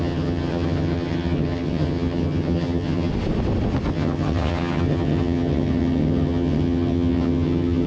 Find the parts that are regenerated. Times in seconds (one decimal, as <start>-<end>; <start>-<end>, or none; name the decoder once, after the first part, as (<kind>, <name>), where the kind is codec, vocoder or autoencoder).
0.0-3.1 (vocoder, HiFi-GAN); 3.9-7.9